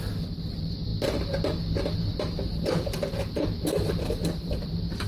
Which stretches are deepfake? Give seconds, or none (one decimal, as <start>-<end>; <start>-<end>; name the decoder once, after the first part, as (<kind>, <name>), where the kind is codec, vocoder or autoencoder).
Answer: none